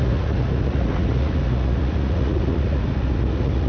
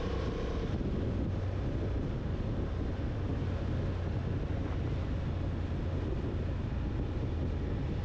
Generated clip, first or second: first